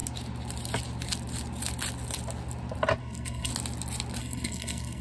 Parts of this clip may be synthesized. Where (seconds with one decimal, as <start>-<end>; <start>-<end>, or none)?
3.0-3.5; 4.2-5.0